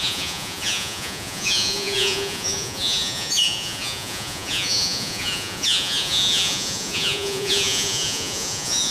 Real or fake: fake